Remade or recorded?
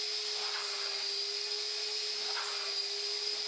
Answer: recorded